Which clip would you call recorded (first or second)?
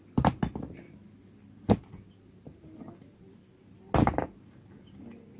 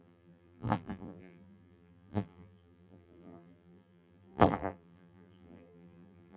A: first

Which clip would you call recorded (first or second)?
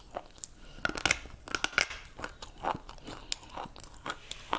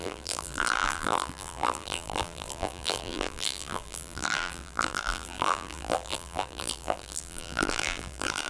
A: first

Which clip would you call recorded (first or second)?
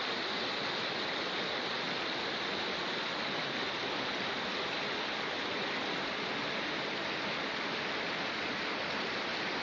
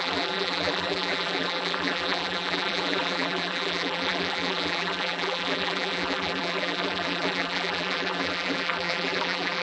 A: first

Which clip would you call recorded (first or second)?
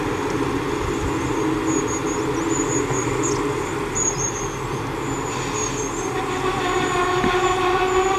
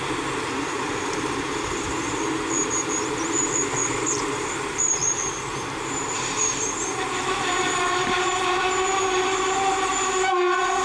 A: first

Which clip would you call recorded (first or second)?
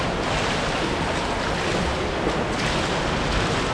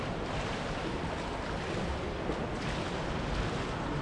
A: first